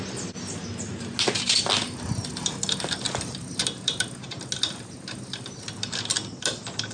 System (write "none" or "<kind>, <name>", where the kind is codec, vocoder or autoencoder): none